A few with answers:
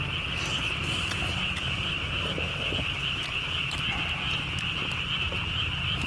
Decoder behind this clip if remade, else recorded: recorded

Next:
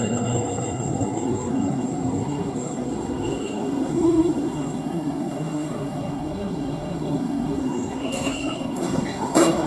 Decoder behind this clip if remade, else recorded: remade, codec, SNAC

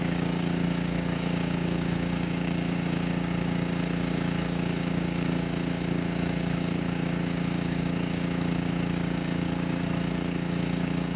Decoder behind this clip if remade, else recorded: remade, codec, DAC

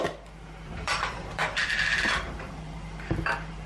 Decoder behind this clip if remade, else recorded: remade, vocoder, BigVGAN v2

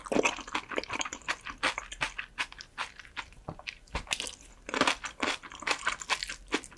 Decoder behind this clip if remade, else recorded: recorded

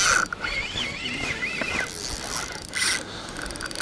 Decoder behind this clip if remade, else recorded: recorded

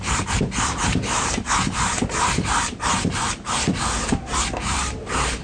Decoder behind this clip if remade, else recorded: remade, vocoder, BigVGAN v2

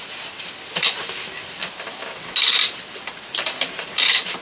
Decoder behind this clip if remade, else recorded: remade, vocoder, BigVGAN v2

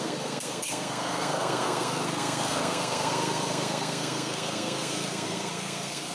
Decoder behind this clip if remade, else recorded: remade, codec, SNAC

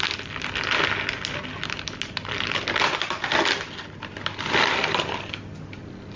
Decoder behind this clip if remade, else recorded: recorded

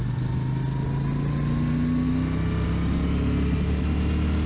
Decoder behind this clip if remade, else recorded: recorded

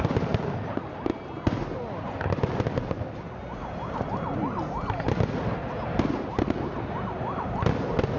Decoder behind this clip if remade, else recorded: recorded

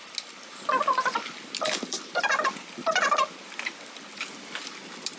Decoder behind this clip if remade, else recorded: recorded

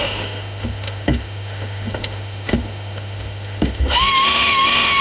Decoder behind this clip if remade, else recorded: remade, autoencoder, DAC-VAE